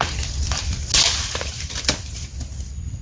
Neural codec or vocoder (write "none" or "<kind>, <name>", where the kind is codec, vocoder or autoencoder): none